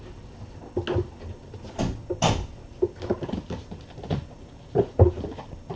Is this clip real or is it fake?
real